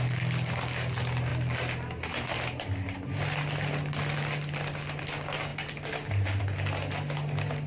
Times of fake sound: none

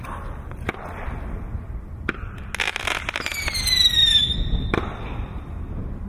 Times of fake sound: 4.0-5.4 (vocoder, BigVGAN v2)

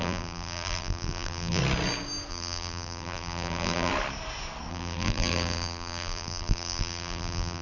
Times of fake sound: 0.0-1.6 (vocoder, BigVGAN v2); 2.3-3.9; 4.7-7.6

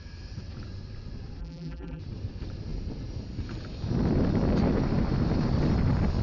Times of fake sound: 1.4-2.0 (vocoder, BigVGAN v2)

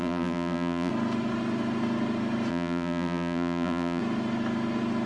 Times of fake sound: 0.0-0.9 (vocoder, BigVGAN v2); 2.5-4.0

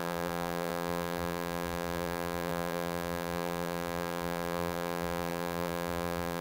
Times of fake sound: 0.0-6.4 (vocoder, BigVGAN v2)

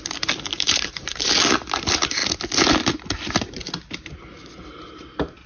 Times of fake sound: 0.5-1.3 (vocoder, BigVGAN v2)